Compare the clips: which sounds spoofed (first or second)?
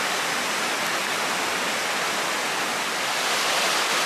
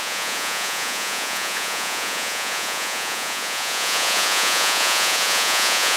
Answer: second